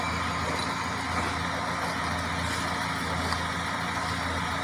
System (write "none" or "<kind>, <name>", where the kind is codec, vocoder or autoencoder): none